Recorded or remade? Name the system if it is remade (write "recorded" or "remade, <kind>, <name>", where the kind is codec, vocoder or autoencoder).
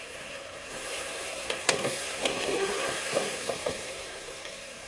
remade, codec, SNAC